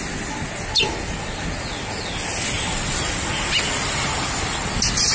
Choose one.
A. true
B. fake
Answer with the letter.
A